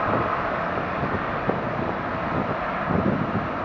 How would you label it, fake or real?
real